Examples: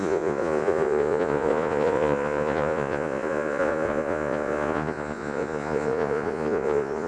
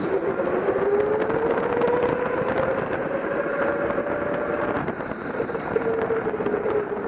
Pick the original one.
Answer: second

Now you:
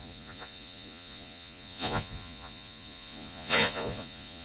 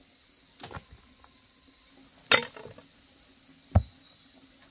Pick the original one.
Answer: second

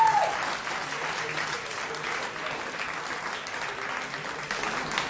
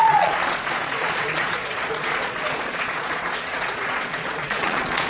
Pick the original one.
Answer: first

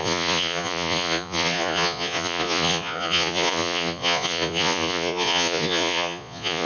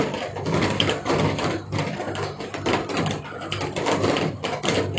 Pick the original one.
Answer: second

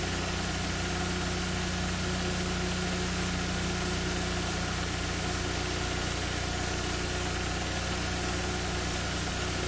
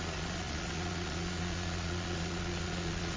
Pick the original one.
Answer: first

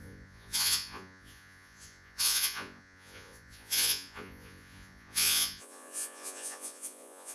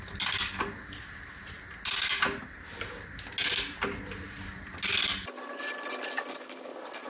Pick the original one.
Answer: second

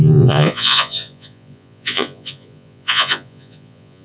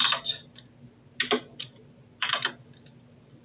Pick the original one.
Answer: second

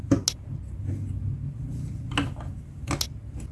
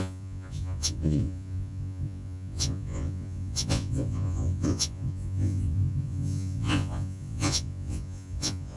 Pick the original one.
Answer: first